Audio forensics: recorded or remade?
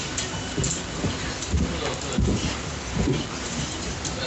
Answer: recorded